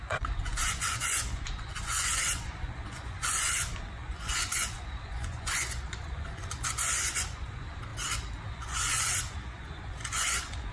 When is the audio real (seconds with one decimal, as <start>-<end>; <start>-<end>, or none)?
7.9-8.5